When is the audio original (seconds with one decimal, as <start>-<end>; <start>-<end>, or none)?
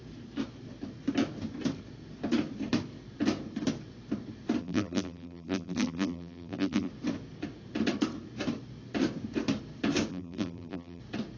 0.0-4.6; 6.9-10.1; 11.0-11.4